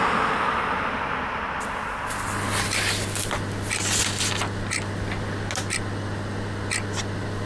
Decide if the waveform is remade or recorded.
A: recorded